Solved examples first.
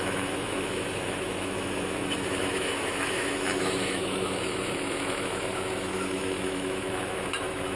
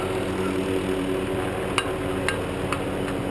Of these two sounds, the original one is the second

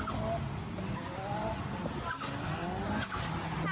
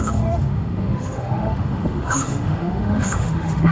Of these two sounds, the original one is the first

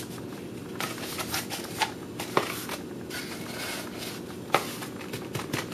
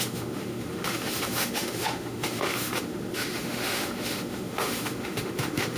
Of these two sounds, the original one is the first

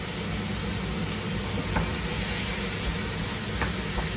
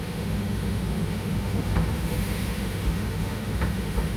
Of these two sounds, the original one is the first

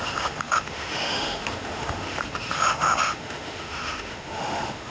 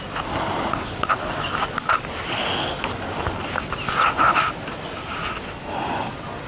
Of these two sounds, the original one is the second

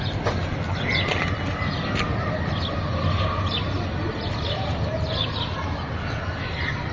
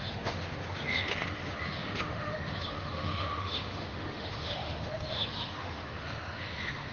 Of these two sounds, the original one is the first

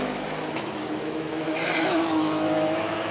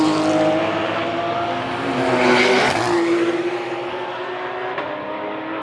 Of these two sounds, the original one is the second